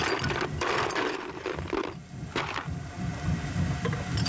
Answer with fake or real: real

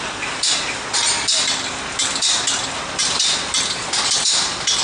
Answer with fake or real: real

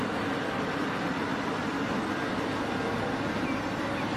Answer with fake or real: real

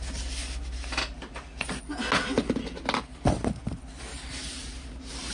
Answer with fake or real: real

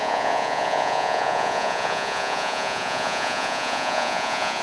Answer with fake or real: fake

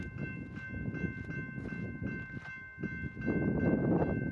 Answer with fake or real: real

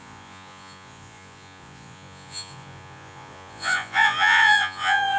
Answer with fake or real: fake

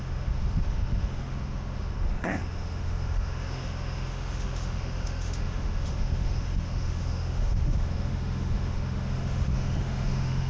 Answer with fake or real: fake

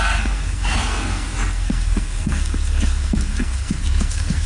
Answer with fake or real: fake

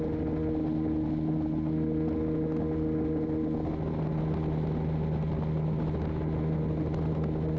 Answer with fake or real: real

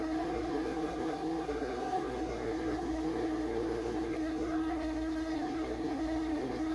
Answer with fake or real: fake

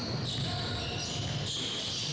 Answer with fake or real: real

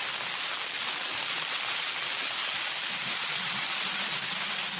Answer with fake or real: real